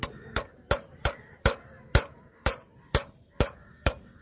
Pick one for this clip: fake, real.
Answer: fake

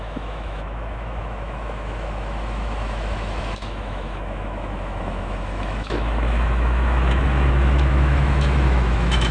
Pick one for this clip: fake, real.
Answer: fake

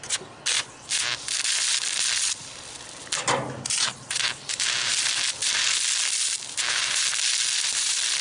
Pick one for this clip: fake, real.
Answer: fake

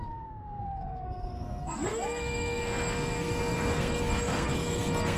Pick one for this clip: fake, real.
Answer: fake